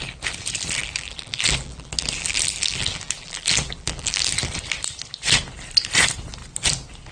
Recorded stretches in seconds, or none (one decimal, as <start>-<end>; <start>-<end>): 0.0-0.8; 4.5-7.1